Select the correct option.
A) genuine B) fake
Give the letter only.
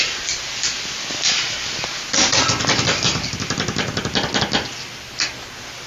A